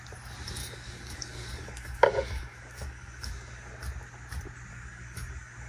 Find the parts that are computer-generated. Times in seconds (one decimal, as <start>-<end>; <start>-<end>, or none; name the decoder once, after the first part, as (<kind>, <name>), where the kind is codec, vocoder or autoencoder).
0.6-3.7 (codec, DAC); 4.7-5.7